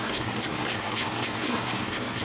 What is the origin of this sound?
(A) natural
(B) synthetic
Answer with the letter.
B